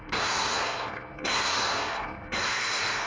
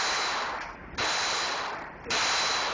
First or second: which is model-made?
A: first